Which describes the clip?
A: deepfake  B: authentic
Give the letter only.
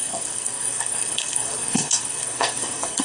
A